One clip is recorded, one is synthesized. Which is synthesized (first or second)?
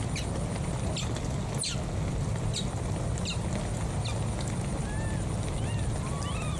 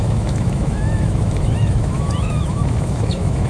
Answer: second